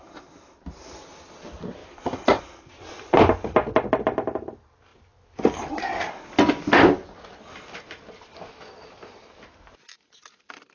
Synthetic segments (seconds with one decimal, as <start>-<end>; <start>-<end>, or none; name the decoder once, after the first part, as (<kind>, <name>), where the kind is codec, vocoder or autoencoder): 1.8-2.4 (vocoder, BigVGAN v2)